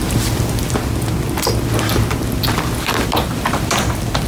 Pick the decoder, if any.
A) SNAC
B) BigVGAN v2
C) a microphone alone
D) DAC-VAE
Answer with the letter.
C